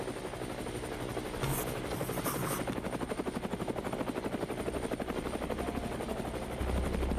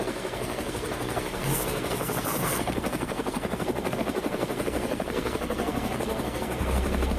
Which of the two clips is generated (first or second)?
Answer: second